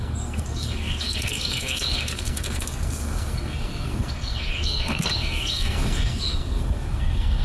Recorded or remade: remade